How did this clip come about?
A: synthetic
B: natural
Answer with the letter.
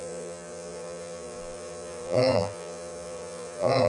A